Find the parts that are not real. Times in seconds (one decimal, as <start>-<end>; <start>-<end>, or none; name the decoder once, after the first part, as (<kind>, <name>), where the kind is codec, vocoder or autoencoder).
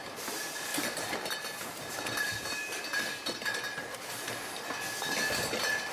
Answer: 0.0-0.7 (vocoder, BigVGAN v2); 1.8-3.2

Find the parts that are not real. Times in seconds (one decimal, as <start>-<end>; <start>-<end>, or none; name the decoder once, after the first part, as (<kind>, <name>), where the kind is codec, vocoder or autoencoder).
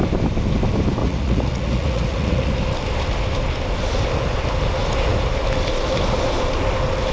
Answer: 1.0-2.5 (vocoder, Vocos)